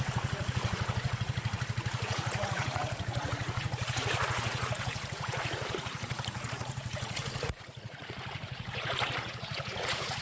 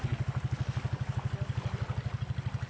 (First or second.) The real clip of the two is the second